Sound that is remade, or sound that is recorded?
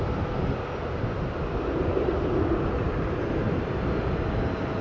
recorded